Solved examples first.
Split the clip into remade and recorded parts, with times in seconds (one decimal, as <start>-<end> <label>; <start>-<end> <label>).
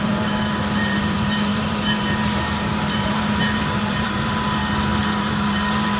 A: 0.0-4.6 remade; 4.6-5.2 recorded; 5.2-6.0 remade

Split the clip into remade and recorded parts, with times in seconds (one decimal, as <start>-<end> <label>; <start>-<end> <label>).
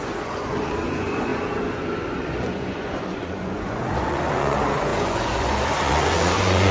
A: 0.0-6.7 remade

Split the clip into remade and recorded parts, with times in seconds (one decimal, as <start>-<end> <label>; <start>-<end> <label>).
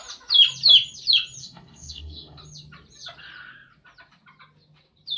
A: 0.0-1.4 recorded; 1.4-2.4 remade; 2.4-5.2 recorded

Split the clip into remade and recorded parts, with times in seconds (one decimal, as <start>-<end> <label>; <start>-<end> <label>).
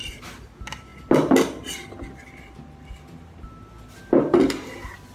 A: 0.0-5.1 recorded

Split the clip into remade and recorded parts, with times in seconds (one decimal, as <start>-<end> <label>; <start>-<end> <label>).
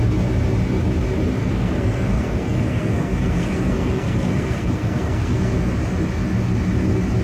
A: 0.0-1.4 recorded; 1.4-5.7 remade; 5.7-7.2 recorded